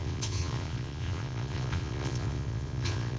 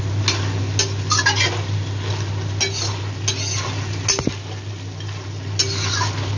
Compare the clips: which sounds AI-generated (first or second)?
first